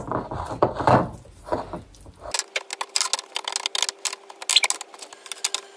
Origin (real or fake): real